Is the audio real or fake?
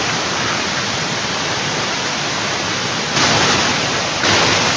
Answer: real